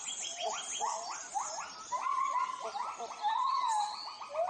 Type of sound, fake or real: real